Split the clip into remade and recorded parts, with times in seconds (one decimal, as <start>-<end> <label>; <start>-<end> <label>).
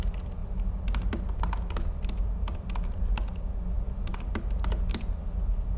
0.0-5.8 recorded